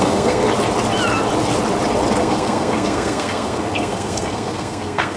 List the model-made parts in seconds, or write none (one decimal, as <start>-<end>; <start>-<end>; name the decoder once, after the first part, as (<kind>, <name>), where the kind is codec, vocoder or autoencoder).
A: 0.0-0.4 (codec, SNAC); 2.2-5.2